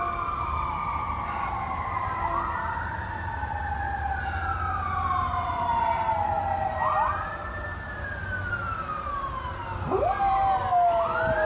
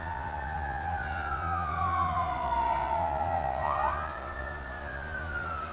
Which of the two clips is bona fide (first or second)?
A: first